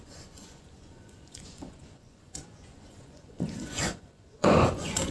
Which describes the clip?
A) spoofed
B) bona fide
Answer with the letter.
A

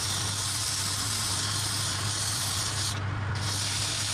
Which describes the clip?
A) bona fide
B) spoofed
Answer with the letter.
A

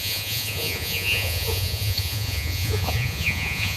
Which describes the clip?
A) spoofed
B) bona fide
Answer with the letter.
A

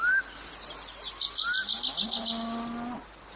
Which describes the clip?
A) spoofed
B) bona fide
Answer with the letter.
B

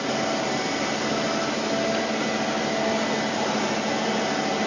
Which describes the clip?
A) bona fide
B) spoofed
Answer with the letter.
A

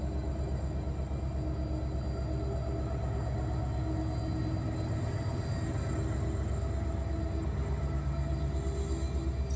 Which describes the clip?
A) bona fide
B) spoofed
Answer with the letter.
A